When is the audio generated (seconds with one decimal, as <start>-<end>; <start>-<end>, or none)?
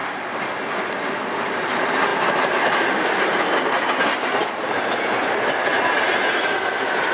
none